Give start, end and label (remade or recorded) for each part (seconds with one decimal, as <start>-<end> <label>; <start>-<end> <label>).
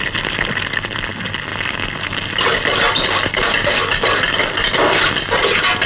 0.0-5.9 recorded